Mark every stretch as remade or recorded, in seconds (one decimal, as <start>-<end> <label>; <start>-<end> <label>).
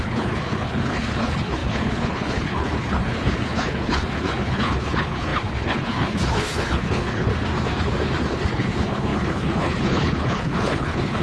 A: 0.0-7.3 remade; 7.3-8.2 recorded; 8.2-11.2 remade